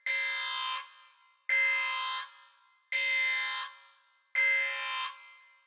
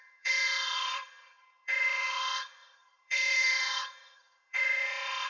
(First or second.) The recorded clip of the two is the first